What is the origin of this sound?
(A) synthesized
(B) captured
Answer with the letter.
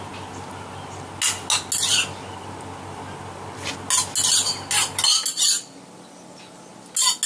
B